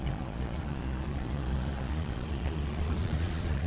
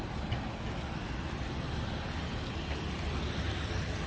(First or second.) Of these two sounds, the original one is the second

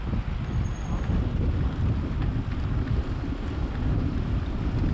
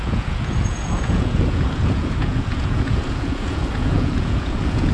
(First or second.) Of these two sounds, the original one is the first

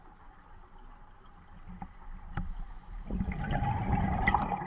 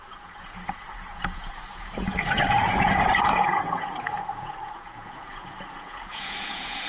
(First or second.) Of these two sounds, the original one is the first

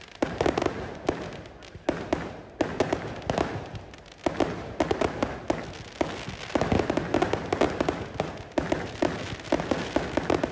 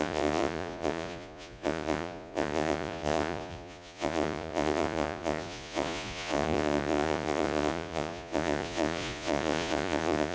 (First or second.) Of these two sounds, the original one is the first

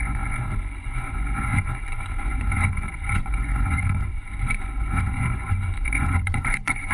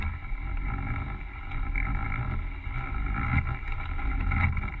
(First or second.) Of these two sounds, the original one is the second